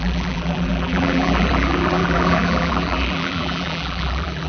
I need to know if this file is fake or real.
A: fake